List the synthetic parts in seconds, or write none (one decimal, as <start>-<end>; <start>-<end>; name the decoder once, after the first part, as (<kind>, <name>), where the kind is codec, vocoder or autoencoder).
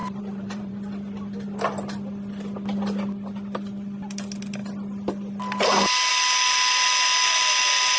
0.0-0.7 (vocoder, BigVGAN v2)